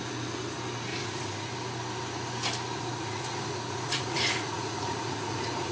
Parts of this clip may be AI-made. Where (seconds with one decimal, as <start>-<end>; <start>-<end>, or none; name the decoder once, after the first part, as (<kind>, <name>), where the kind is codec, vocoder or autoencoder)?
0.9-1.5 (vocoder, Vocos); 2.7-5.7